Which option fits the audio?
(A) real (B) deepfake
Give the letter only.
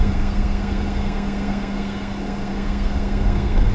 B